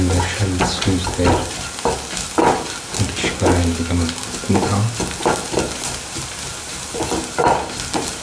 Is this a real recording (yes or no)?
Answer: yes